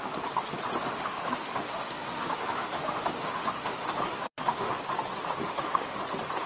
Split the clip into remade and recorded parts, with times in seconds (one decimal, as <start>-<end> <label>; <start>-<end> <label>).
0.0-0.9 recorded; 0.9-4.7 remade; 4.7-5.4 recorded; 5.4-6.0 remade; 6.0-6.5 recorded